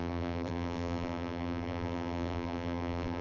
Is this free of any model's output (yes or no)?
no